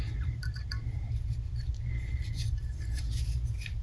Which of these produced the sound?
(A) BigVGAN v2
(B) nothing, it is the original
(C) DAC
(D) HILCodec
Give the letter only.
A